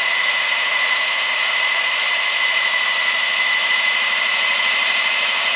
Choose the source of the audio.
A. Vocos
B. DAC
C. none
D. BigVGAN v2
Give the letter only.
A